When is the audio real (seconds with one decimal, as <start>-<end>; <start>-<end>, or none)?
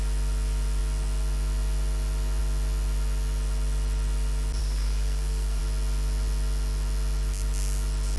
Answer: 0.0-4.6; 5.6-8.2